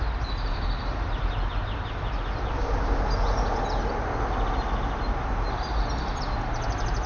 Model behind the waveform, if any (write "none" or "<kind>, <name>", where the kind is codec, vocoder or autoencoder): none